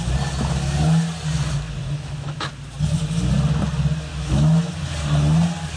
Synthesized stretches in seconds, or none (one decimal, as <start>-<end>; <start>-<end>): 1.8-2.5; 4.1-4.7